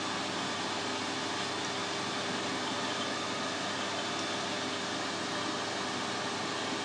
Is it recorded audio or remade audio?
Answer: recorded